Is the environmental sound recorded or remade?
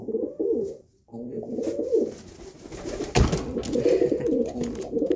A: recorded